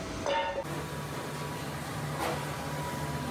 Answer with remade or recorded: recorded